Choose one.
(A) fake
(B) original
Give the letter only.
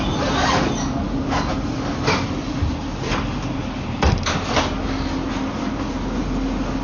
B